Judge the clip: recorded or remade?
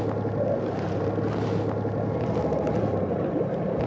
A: recorded